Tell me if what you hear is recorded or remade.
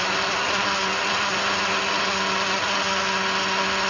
recorded